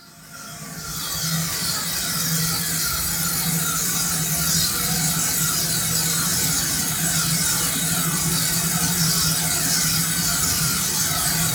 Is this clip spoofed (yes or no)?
no